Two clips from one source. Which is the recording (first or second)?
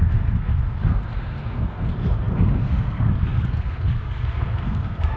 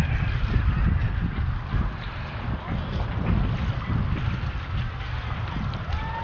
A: second